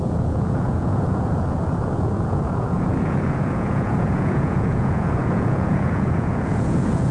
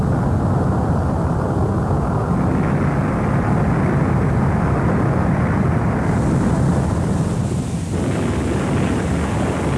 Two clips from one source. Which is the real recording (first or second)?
second